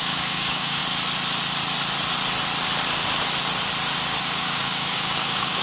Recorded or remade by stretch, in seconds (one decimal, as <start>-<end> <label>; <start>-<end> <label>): 0.0-0.8 remade; 0.8-4.2 recorded; 4.2-5.6 remade